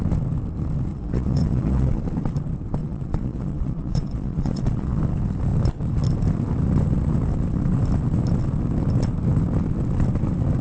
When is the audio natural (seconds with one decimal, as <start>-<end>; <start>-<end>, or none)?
0.0-0.9; 2.0-2.8; 5.0-10.6